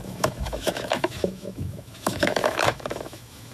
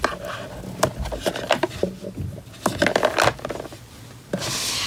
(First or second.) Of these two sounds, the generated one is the first